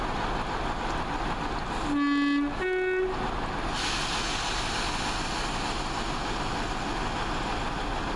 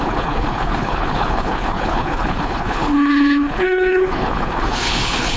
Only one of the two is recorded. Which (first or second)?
first